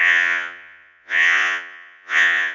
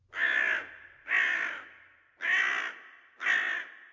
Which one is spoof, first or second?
first